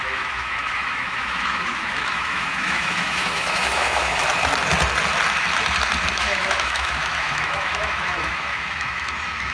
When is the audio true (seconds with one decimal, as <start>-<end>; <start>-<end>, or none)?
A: 4.2-6.1